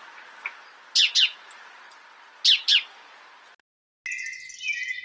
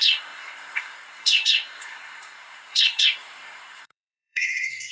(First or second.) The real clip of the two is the first